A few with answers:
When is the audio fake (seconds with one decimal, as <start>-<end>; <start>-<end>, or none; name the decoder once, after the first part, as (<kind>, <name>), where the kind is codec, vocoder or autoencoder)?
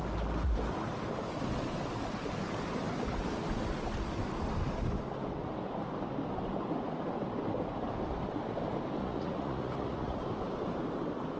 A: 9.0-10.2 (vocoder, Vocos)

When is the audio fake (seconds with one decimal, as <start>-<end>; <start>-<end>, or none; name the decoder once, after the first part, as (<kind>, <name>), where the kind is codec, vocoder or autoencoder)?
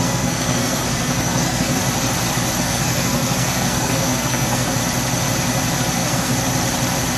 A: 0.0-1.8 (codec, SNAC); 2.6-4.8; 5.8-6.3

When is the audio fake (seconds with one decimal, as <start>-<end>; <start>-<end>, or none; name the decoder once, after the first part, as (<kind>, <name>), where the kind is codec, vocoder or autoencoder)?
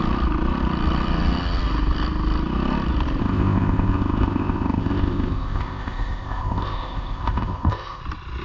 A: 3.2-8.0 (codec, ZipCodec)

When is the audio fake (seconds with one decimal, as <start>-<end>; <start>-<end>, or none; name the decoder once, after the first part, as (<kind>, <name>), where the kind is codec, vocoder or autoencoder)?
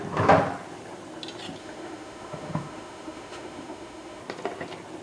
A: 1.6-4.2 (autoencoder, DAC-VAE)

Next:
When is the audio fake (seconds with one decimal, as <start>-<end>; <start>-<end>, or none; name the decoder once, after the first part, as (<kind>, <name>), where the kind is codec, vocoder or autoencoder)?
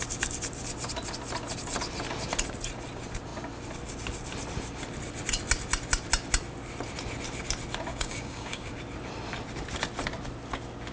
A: 7.9-8.8 (codec, DAC)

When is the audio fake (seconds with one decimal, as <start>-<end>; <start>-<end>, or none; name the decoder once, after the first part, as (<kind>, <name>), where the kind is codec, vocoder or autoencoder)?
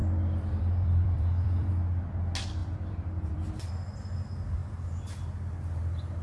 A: 0.0-1.7 (vocoder, BigVGAN v2); 2.6-3.7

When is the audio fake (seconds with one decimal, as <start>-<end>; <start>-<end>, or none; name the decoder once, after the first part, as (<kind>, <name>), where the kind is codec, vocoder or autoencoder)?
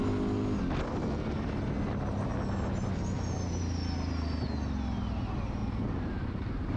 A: none